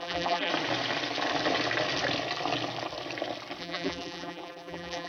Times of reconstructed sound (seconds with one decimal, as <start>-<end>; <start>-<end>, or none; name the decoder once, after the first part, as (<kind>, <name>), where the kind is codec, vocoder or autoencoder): 0.0-0.5 (vocoder, BigVGAN v2); 3.6-5.1